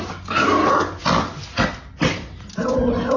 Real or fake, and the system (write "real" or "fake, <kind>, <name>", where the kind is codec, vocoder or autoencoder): real